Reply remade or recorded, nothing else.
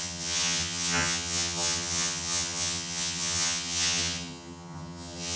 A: remade